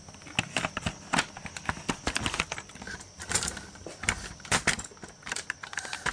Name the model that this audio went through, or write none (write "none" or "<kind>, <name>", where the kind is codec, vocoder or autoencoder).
none